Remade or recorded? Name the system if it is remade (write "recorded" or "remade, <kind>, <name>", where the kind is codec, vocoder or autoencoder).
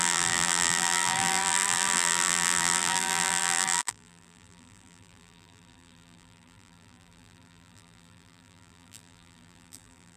remade, vocoder, BigVGAN v2